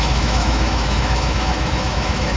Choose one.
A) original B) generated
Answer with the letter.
B